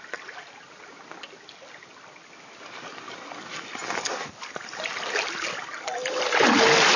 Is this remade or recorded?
recorded